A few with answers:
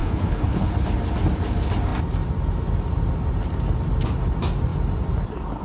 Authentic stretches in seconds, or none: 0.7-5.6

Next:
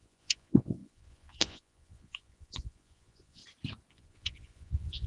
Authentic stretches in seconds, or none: 3.4-3.9